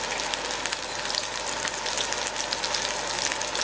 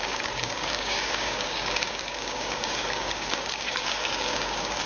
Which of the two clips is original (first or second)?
first